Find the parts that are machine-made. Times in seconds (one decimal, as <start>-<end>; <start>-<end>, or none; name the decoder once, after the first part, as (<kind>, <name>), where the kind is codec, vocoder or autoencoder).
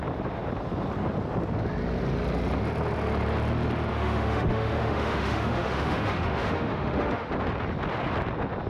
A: 3.9-7.3 (autoencoder, DAC-VAE)